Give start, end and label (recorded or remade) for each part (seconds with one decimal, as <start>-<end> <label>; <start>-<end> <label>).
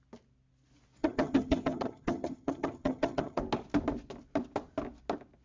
0.0-1.0 recorded; 1.0-3.4 remade; 3.4-5.4 recorded